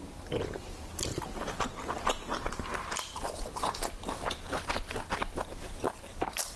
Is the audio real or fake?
fake